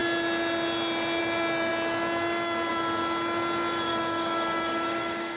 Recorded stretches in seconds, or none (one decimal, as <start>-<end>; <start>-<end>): 0.0-3.9